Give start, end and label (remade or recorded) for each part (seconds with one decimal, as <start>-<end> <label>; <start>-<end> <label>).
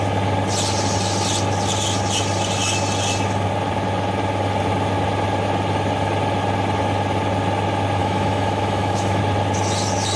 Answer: 0.0-8.0 recorded; 8.0-9.2 remade; 9.2-10.2 recorded